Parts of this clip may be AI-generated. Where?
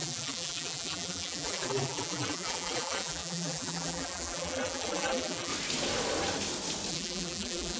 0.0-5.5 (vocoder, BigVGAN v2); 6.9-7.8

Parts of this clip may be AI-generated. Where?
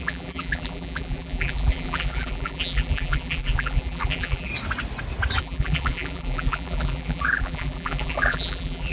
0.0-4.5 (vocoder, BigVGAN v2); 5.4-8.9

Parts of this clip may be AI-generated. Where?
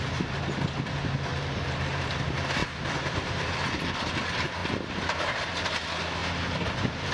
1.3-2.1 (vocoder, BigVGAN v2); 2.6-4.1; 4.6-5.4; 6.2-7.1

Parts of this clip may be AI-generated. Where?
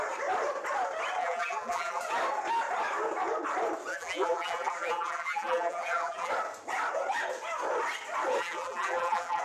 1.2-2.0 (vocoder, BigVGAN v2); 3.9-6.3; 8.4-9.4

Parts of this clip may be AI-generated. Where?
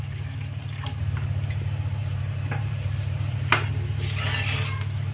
0.4-1.0 (vocoder, BigVGAN v2); 2.0-3.7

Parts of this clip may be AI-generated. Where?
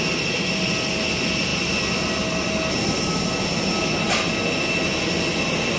none